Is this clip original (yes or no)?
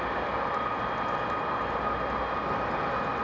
yes